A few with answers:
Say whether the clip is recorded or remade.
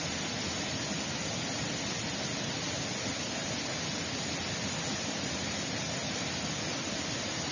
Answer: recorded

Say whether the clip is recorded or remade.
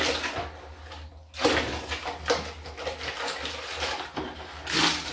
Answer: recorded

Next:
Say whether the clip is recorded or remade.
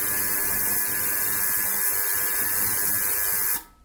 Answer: recorded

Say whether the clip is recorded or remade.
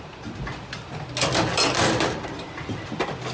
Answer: recorded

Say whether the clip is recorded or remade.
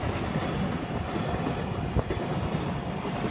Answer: recorded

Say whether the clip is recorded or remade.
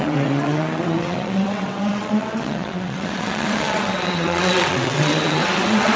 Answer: remade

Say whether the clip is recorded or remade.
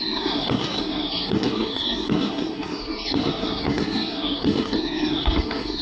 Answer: remade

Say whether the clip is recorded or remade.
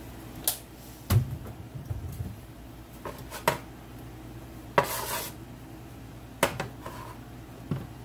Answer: recorded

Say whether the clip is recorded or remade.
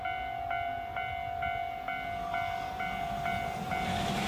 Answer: recorded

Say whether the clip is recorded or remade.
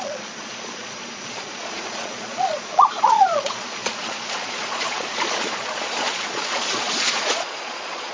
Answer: remade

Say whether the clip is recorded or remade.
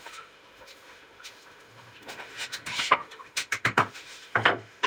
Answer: remade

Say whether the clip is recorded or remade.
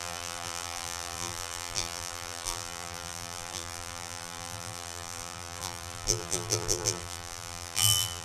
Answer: remade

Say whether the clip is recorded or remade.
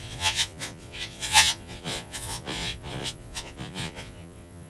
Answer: remade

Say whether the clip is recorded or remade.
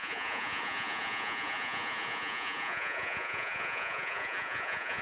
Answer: remade